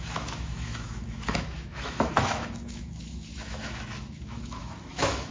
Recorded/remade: remade